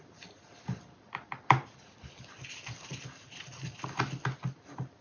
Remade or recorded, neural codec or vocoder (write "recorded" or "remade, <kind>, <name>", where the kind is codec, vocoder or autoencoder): recorded